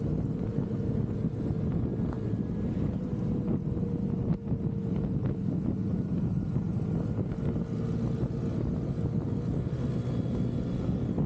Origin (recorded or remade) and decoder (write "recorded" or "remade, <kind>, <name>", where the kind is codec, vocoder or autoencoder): recorded